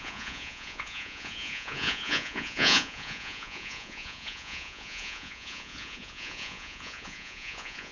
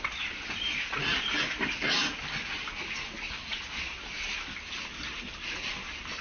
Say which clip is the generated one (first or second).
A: first